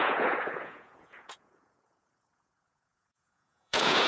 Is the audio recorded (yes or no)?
no